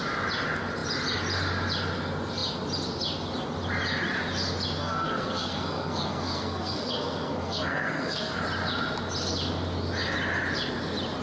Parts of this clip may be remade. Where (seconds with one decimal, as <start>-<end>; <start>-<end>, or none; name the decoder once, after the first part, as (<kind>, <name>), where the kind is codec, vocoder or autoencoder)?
4.8-8.4 (codec, SNAC)